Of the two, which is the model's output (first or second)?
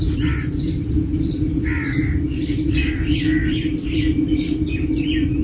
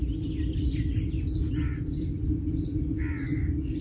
first